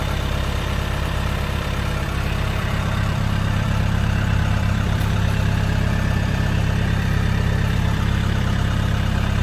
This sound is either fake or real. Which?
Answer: fake